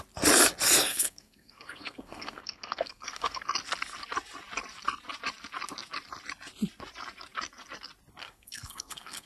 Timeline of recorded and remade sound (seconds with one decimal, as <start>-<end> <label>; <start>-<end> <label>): 0.0-0.9 recorded; 0.9-3.4 remade; 3.4-8.2 recorded; 8.2-9.3 remade

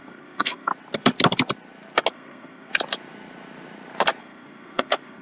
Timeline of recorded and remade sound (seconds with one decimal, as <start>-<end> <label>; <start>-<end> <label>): 0.0-0.7 remade; 0.7-2.1 recorded; 2.1-2.7 remade; 2.7-4.2 recorded; 4.2-5.2 remade

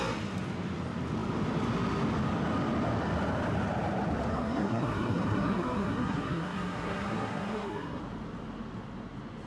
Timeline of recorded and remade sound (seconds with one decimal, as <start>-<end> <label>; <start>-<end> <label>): 0.0-4.3 recorded; 4.3-8.0 remade; 8.0-9.5 recorded

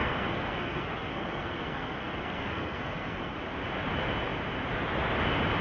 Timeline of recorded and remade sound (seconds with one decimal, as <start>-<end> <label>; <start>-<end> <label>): 0.0-3.4 remade; 3.4-5.6 recorded